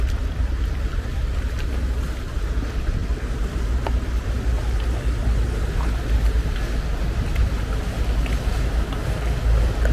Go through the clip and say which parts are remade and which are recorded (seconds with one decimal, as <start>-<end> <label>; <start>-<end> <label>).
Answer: 0.0-9.9 recorded